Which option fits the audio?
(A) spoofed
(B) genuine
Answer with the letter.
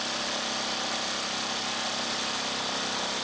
B